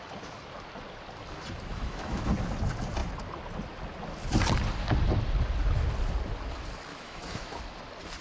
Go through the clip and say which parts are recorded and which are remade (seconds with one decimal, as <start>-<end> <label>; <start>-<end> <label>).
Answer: 0.0-1.7 recorded; 1.7-2.3 remade; 2.3-6.9 recorded; 6.9-7.6 remade; 7.6-8.2 recorded